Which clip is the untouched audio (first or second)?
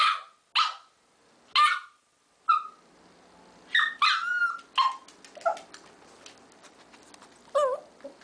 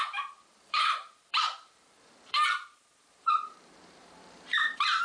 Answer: first